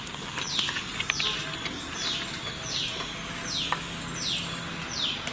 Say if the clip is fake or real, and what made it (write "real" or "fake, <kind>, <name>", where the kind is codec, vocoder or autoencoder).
real